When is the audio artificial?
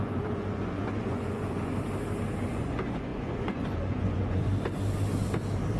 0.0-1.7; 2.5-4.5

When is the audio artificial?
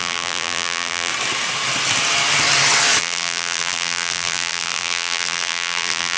0.0-1.1; 3.0-6.2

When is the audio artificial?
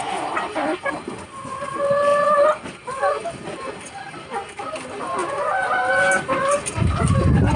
none